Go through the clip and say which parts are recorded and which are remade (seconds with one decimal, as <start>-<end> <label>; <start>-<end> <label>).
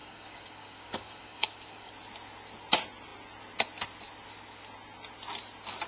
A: 0.0-1.9 remade; 1.9-5.9 recorded